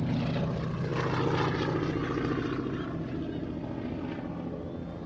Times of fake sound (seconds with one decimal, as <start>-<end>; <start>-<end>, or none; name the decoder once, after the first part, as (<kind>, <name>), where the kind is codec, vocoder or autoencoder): none